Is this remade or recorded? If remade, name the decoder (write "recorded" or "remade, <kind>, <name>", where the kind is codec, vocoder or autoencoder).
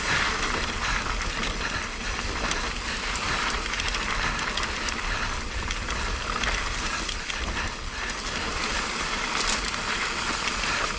recorded